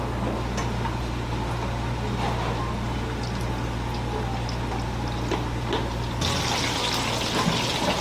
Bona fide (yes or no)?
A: yes